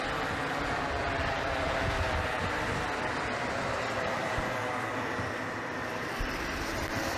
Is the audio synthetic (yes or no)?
yes